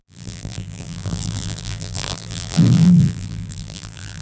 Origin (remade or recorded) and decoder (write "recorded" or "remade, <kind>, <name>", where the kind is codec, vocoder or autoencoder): remade, vocoder, BigVGAN v2